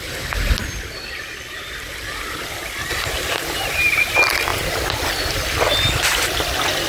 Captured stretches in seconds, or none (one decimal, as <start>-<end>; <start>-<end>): 0.0-0.6; 2.9-6.9